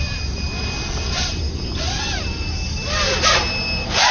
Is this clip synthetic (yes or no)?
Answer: no